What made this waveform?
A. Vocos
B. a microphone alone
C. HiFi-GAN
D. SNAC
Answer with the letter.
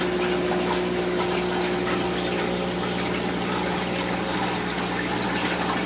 B